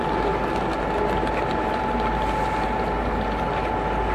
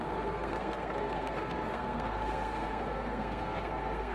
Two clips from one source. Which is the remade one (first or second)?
second